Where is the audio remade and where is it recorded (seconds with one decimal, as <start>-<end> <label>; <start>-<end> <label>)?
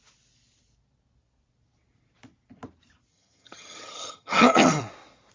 0.0-3.1 recorded; 3.1-4.8 remade; 4.8-5.3 recorded